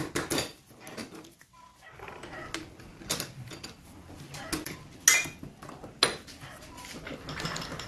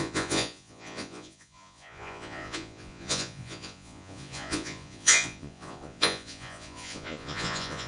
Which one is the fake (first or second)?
second